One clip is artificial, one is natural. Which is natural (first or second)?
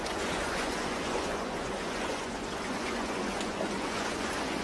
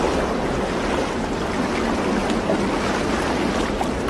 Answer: second